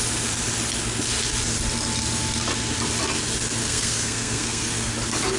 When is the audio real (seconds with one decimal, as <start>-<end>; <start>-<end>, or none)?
0.0-3.6; 4.9-5.4

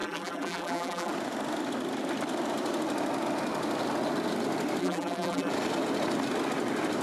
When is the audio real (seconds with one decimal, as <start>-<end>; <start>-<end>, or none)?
1.1-4.8; 5.5-7.0

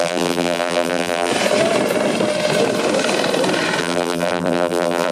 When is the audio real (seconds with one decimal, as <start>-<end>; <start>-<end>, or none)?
1.3-3.8

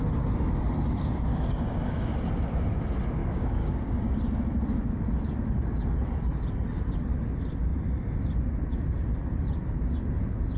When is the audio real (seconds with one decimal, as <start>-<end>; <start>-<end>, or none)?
0.0-1.3; 2.1-3.2; 4.1-10.6